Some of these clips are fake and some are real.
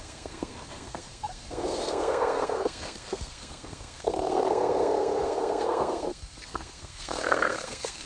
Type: fake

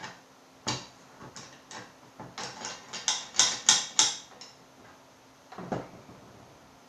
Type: real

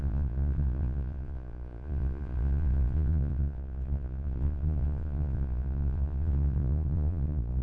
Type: fake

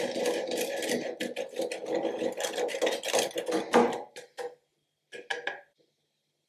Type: real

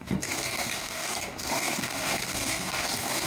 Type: fake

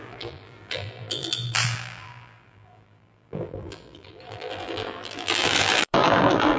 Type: fake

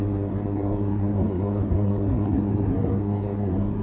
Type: fake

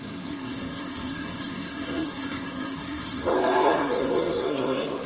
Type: fake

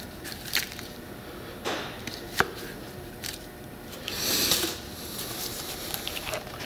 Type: fake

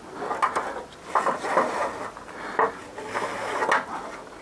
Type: real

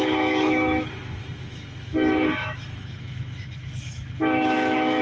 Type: fake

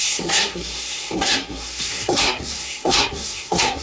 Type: fake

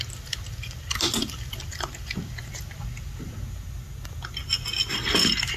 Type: real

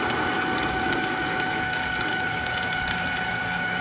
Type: fake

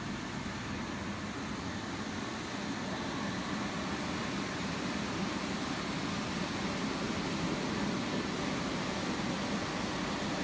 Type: real